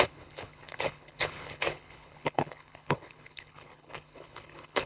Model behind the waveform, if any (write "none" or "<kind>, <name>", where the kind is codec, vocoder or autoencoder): codec, HILCodec